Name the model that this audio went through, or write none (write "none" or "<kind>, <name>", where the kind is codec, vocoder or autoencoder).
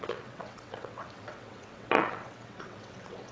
vocoder, WaveNeXt